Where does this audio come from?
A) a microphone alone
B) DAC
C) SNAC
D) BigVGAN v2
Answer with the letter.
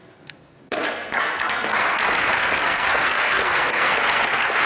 C